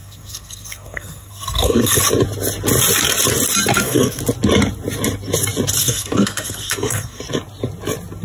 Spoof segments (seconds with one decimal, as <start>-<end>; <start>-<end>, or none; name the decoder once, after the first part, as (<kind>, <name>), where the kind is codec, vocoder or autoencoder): 0.0-2.0 (codec, SNAC); 3.7-4.2; 5.8-7.2